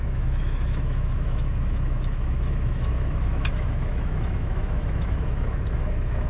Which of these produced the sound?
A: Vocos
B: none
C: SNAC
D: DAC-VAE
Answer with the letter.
D